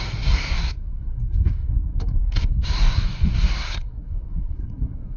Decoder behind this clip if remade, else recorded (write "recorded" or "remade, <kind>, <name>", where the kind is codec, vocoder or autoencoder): remade, codec, SNAC